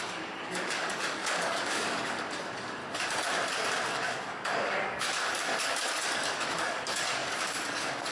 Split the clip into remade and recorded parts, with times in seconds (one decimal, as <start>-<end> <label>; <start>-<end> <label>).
0.0-2.8 remade; 2.8-3.9 recorded; 3.9-8.1 remade